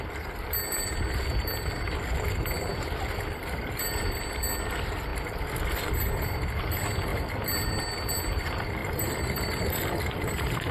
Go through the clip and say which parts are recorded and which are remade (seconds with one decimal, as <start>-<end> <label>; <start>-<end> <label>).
0.0-3.4 recorded; 3.4-4.2 remade; 4.2-8.8 recorded; 8.8-10.7 remade